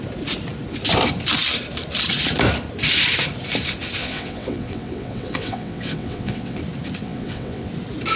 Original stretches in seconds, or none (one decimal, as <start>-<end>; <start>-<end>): 0.0-4.0; 6.6-7.0; 7.7-8.2

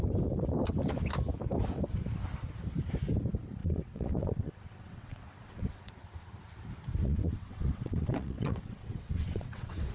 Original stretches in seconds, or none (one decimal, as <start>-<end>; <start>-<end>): 0.0-3.6; 5.9-7.0